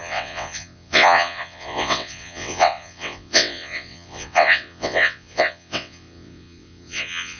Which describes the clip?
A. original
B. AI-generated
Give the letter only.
B